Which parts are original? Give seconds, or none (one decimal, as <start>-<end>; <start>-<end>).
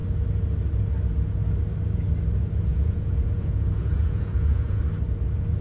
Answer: 0.0-2.7; 4.8-5.6